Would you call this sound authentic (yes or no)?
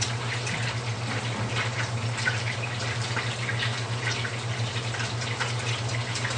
yes